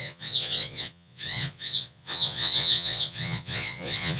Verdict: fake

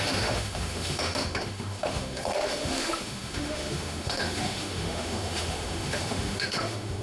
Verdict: fake